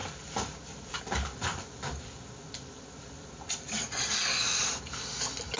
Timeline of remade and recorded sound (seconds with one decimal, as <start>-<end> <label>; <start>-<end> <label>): 0.0-1.0 remade; 1.0-1.5 recorded; 1.5-4.9 remade; 4.9-5.6 recorded

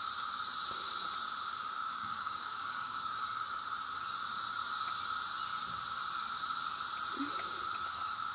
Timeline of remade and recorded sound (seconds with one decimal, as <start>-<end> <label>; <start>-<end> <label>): 0.0-1.9 recorded; 1.9-3.2 remade; 3.2-8.3 recorded

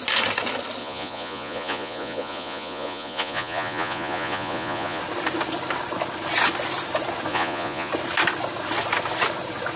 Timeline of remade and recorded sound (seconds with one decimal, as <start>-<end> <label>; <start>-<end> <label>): 0.0-0.8 recorded; 0.8-5.0 remade; 5.0-7.3 recorded; 7.3-7.9 remade; 7.9-9.8 recorded